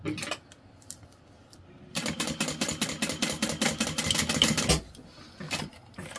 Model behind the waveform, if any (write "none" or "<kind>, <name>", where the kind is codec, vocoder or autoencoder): none